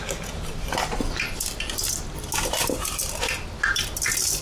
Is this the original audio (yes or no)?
yes